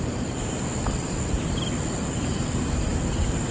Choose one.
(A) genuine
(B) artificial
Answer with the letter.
A